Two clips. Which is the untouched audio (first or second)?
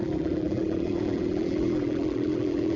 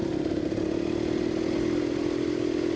second